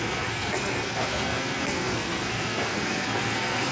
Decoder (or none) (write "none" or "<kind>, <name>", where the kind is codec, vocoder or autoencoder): codec, SNAC